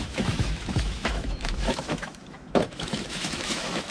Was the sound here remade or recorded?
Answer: remade